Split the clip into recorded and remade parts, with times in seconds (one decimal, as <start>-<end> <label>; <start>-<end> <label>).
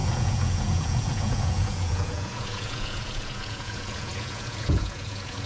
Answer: 0.0-5.5 remade